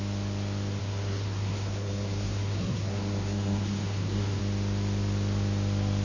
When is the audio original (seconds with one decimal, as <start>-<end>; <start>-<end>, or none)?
0.0-0.8; 4.4-6.0